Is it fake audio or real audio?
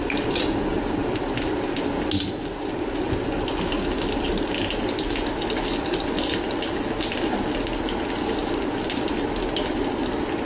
real